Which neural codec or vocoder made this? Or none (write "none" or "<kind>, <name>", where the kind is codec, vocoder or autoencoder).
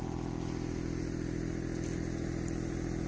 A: none